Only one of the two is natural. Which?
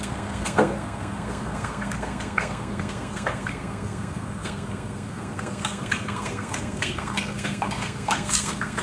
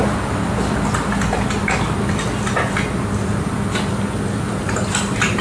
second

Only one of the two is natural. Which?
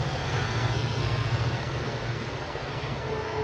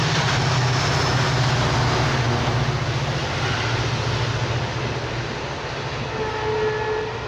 second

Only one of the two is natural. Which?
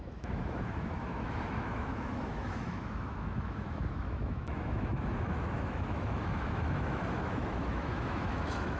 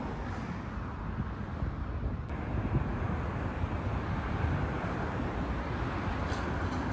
second